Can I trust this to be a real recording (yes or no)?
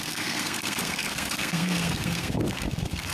no